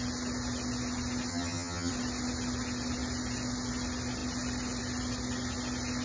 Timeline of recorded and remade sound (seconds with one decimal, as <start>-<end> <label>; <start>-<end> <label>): 0.0-1.3 recorded; 1.3-1.9 remade; 1.9-6.0 recorded